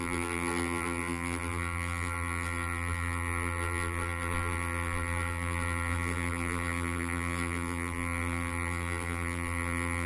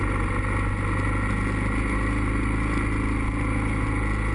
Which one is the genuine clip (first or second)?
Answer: second